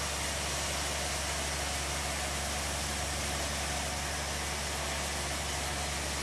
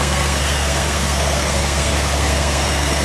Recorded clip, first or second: first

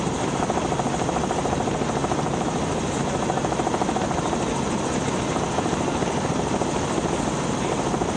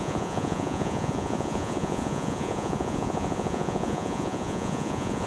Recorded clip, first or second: first